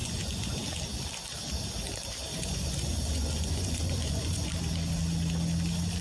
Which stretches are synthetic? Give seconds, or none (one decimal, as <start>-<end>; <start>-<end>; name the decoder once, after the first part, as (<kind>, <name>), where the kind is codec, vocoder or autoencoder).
0.0-0.5 (vocoder, Vocos); 2.3-4.5